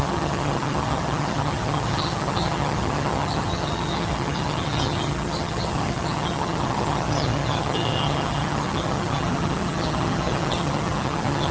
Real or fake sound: fake